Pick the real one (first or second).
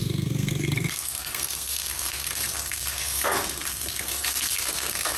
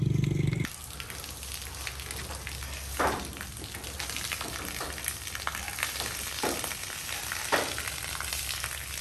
second